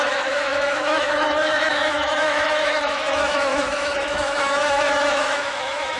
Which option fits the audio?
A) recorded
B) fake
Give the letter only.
B